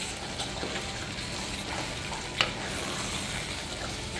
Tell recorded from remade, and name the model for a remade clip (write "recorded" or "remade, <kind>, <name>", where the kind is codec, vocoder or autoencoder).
recorded